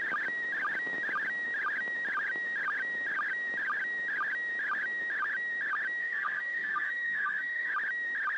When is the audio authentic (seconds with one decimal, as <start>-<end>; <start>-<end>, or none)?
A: 0.0-6.0; 7.7-8.4